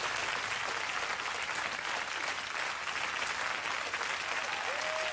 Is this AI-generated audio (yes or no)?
no